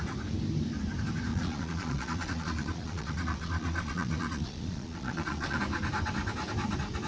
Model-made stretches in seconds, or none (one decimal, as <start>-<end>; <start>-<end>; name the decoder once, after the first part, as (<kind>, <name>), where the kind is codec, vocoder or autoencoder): 1.3-5.6 (vocoder, Vocos)